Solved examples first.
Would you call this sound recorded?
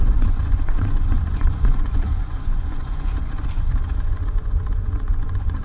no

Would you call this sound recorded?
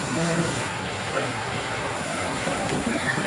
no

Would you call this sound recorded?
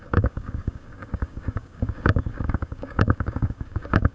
no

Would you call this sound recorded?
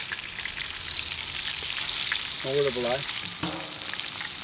yes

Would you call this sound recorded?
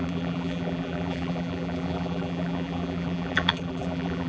no